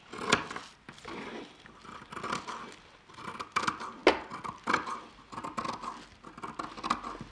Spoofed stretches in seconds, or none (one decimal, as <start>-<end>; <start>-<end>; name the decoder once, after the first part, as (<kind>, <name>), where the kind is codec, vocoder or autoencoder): none